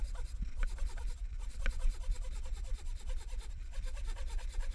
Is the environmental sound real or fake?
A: real